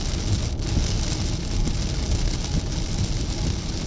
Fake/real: real